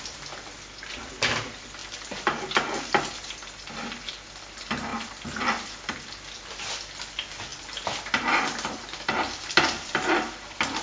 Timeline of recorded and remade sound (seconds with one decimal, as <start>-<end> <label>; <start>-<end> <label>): 0.0-10.8 recorded